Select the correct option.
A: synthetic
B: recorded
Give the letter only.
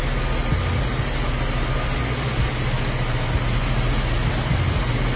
B